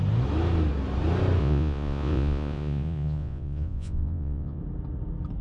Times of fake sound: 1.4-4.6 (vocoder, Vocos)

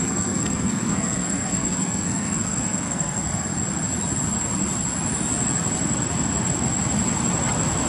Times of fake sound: 0.0-3.5 (codec, SNAC)

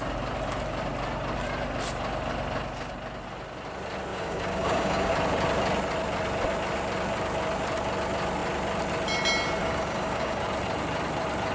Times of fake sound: 4.1-5.1 (codec, DAC); 9.6-10.4

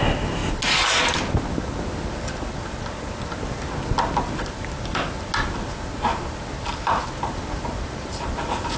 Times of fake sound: none

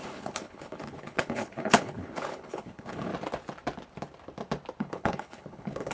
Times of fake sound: 0.0-3.1 (codec, HILCodec); 4.8-5.9